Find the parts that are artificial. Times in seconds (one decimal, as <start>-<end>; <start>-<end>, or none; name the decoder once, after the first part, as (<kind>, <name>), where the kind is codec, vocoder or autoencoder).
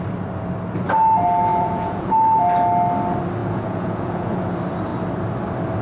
1.5-2.1 (vocoder, Vocos); 3.4-4.4